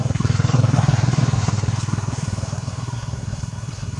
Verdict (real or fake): fake